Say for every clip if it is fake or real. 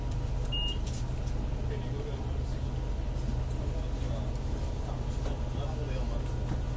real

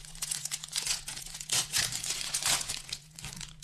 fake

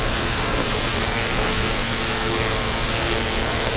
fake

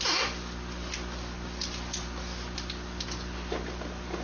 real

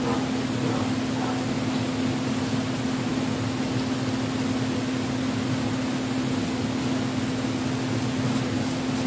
real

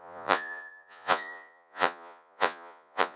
fake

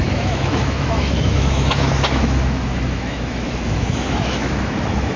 fake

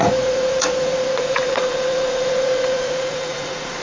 fake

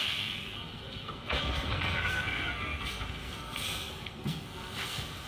fake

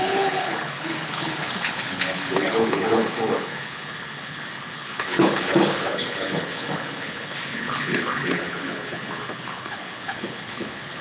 fake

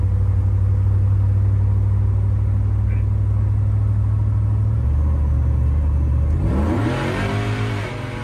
real